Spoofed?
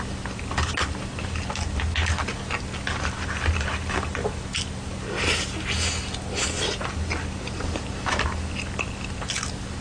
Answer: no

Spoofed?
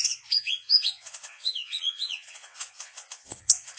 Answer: yes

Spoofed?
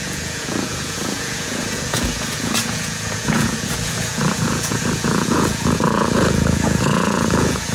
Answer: yes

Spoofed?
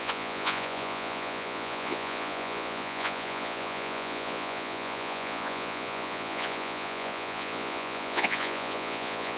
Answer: yes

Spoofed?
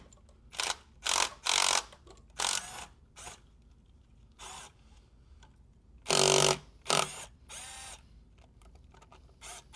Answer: no